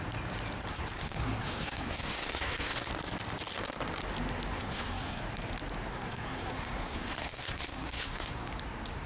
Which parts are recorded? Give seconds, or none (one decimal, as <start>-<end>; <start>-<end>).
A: 0.0-0.7; 2.9-4.5; 5.2-5.9; 8.5-9.1